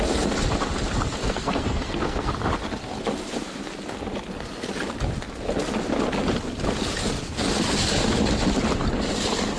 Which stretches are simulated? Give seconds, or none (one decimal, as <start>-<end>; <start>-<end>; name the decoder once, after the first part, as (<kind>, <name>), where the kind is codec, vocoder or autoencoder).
1.2-2.3 (codec, SNAC)